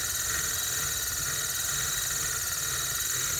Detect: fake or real real